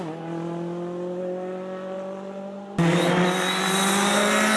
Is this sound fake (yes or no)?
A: no